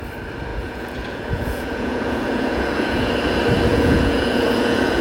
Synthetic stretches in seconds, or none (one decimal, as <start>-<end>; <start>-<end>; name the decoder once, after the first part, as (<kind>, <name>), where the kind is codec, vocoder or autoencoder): 0.5-3.1 (vocoder, Vocos); 3.7-5.0